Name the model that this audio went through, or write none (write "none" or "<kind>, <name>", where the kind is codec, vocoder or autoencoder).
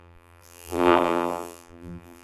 vocoder, BigVGAN v2